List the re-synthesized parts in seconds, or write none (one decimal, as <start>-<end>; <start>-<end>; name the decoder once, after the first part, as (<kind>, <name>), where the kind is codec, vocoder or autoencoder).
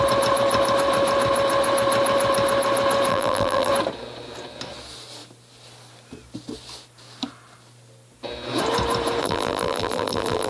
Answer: 3.1-3.7 (vocoder, BigVGAN v2); 9.2-10.5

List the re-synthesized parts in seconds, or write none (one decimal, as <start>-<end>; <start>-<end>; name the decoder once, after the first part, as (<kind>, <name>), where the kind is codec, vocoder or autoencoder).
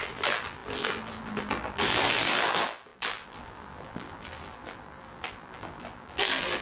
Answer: 0.0-6.6 (vocoder, BigVGAN v2)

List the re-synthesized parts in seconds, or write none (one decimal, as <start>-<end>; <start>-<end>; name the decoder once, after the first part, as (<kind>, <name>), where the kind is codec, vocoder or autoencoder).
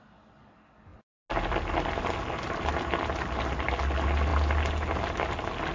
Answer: none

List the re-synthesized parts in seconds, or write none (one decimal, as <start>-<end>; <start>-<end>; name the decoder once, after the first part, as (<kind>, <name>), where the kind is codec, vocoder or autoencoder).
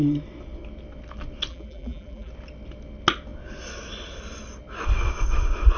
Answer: 1.5-2.3 (vocoder, BigVGAN v2)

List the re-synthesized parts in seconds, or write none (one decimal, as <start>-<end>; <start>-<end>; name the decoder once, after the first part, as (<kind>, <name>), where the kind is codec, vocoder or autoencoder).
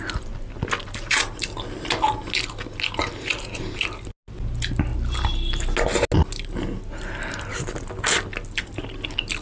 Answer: none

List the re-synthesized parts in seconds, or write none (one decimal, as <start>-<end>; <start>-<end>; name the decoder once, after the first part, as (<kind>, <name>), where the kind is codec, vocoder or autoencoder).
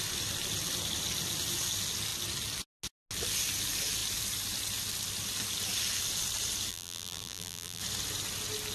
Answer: 6.7-7.8 (vocoder, BigVGAN v2)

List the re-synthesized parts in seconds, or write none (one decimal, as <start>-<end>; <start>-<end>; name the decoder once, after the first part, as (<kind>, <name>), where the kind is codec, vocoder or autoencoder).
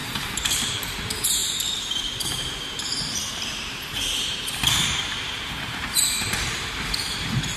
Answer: 0.0-7.6 (vocoder, BigVGAN v2)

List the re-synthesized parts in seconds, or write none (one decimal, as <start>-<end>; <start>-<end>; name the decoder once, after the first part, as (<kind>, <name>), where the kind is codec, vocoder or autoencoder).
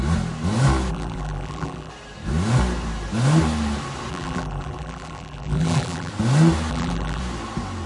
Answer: 0.9-1.9 (vocoder, BigVGAN v2); 4.1-6.1; 6.7-7.2